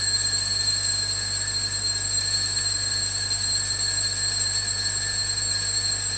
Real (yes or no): yes